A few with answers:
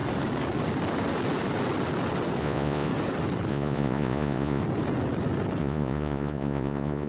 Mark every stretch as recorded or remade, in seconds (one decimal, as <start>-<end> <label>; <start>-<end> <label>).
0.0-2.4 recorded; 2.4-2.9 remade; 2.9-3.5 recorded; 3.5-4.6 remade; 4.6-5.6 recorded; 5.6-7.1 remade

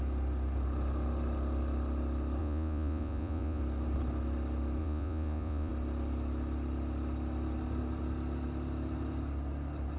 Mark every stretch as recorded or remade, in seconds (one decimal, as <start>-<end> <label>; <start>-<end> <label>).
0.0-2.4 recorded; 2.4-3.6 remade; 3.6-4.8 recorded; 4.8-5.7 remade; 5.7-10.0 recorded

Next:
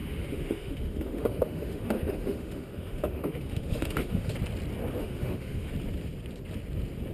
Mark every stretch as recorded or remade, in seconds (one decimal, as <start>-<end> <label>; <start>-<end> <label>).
0.0-4.3 remade; 4.3-5.0 recorded; 5.0-5.7 remade; 5.7-7.1 recorded

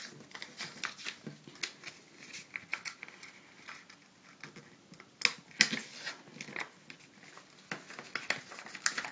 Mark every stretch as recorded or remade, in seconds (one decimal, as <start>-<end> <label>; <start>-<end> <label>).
0.0-9.1 recorded

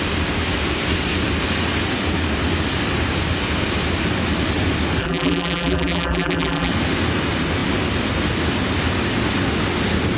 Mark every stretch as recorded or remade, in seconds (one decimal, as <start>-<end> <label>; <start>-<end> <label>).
0.0-5.0 recorded; 5.0-6.7 remade; 6.7-10.2 recorded

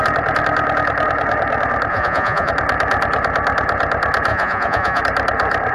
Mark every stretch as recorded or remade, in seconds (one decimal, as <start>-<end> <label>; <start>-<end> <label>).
0.0-1.9 recorded; 1.9-2.5 remade; 2.5-4.3 recorded; 4.3-5.0 remade; 5.0-5.7 recorded

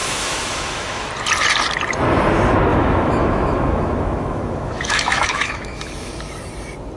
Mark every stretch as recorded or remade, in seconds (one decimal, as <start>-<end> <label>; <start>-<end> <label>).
0.0-1.1 remade; 1.1-2.7 recorded; 2.7-6.1 remade; 6.1-7.0 recorded